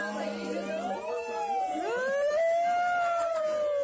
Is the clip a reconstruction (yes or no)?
no